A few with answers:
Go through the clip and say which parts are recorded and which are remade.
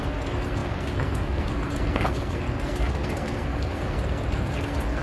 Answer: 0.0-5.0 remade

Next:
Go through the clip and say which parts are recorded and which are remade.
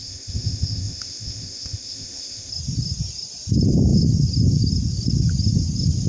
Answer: 0.0-2.5 remade; 2.5-6.1 recorded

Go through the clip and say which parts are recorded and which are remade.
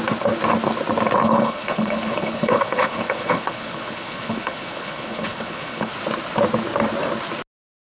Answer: 0.0-1.2 recorded; 1.2-5.9 remade; 5.9-7.8 recorded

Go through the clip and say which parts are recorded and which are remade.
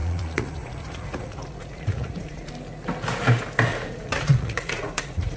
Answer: 0.0-2.5 remade; 2.5-3.7 recorded; 3.7-5.4 remade